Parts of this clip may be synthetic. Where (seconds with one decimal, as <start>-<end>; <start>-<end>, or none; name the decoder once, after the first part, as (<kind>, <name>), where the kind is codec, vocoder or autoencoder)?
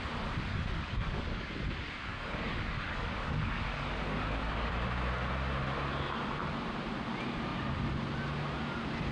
0.5-1.5 (codec, DAC); 2.1-4.7